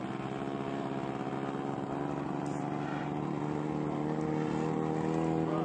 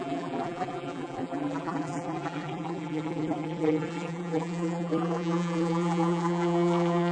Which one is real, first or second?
first